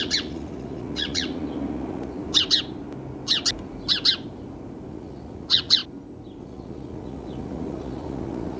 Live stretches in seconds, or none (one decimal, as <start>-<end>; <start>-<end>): 2.2-4.9; 5.8-6.4